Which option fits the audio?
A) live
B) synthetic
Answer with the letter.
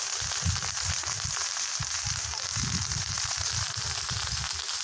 A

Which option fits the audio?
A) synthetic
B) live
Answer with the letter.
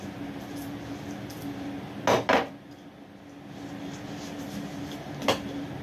B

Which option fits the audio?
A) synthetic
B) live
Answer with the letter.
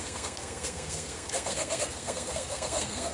A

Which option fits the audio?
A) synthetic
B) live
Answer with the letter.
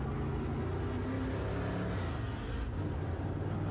B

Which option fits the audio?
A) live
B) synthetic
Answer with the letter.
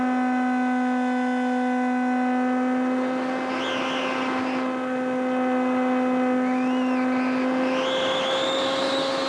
A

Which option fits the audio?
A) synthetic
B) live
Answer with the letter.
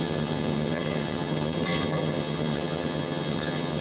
A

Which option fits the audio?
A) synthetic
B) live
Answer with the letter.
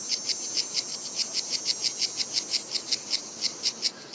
B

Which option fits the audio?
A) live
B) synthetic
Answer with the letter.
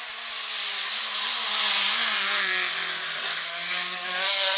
A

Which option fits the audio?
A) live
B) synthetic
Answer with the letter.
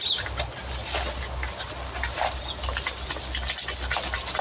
A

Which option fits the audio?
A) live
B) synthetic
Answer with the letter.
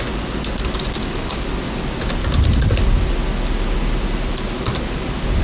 A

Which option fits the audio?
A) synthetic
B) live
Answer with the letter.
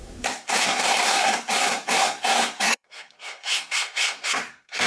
A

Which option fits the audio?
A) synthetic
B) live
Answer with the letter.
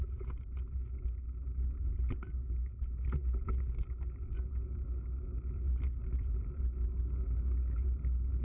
B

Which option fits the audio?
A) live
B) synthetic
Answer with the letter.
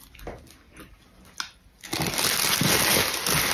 A